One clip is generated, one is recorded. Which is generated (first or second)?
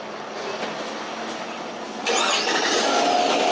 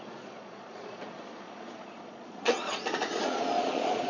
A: second